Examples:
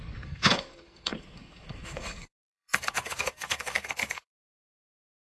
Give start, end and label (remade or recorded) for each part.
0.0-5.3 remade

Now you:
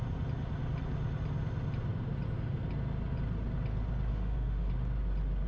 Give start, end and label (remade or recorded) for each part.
0.0-4.1 recorded; 4.1-4.7 remade; 4.7-5.5 recorded

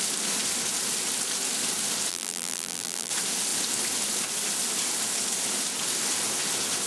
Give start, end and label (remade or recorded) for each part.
0.0-2.1 recorded; 2.1-3.1 remade; 3.1-6.9 recorded

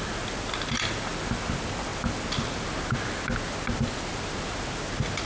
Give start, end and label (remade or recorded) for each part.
0.0-5.3 recorded

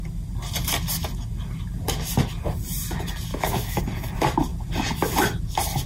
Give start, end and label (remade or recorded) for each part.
0.0-3.3 recorded; 3.3-3.8 remade; 3.8-5.9 recorded